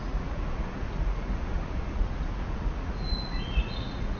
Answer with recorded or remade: remade